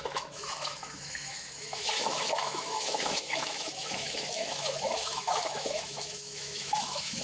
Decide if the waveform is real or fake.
fake